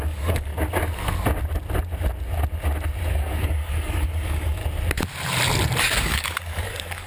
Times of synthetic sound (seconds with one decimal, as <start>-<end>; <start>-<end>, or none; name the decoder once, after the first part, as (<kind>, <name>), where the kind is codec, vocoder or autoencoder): 0.0-0.5 (codec, DAC); 3.1-4.6; 5.8-7.1